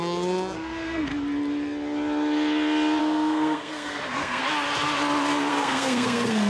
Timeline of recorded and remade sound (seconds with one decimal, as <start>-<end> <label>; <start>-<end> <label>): 0.0-1.1 remade; 1.1-3.0 recorded; 3.0-4.4 remade; 4.4-5.5 recorded; 5.5-6.5 remade